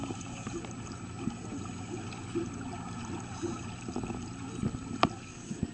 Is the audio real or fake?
real